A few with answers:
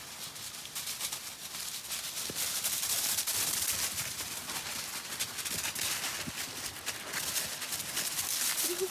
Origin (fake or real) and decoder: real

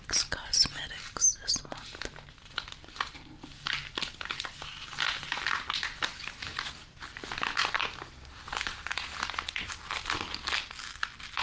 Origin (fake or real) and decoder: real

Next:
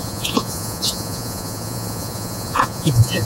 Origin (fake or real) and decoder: fake, vocoder, Vocos